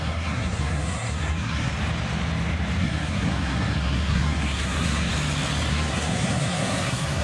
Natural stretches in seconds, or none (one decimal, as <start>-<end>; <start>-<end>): 1.7-2.8; 5.1-5.7